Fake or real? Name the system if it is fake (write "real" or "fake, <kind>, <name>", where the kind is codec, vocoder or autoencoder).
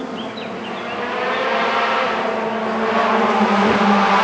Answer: real